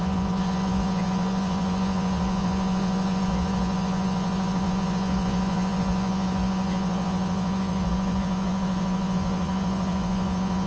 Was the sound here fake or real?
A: fake